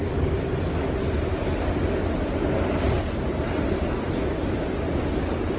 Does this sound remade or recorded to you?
recorded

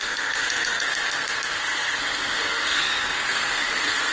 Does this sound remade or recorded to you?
remade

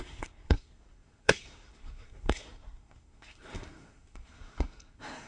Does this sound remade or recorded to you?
remade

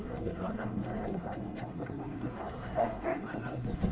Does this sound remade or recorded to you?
remade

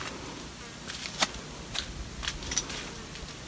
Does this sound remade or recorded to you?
recorded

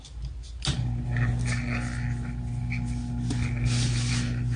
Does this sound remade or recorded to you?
recorded